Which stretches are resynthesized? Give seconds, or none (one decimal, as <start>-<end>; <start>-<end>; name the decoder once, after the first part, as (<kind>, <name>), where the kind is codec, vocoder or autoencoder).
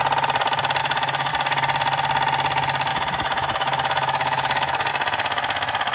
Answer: 0.8-1.3 (autoencoder, DAC-VAE); 2.9-4.9